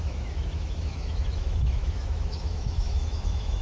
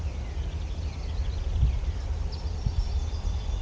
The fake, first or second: first